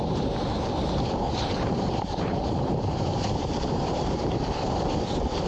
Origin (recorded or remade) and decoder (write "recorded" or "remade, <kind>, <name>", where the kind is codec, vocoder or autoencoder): remade, vocoder, BigVGAN v2